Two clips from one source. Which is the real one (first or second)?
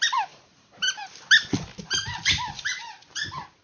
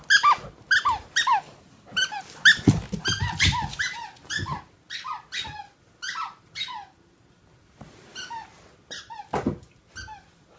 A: second